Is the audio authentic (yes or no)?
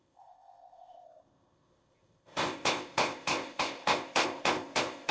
no